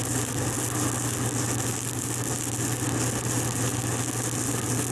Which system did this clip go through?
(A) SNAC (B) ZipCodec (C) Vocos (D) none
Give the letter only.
D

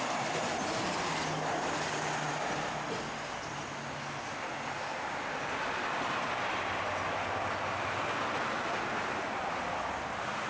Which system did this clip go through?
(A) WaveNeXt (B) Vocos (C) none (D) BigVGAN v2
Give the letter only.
C